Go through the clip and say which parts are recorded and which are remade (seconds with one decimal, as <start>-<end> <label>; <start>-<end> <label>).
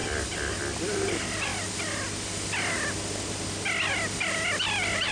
0.0-5.1 recorded